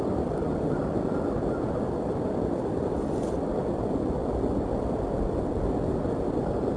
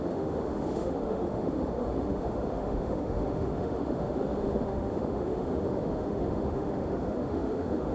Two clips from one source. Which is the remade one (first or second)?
second